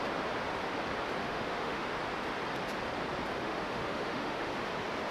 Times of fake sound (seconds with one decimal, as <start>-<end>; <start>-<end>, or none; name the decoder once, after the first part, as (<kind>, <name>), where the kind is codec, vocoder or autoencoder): 1.2-2.0 (autoencoder, DAC-VAE); 3.4-4.5